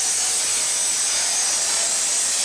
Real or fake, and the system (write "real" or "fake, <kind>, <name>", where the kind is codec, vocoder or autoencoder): real